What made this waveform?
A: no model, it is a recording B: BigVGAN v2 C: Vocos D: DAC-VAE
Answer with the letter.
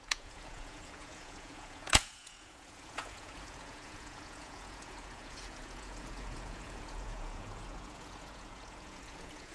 C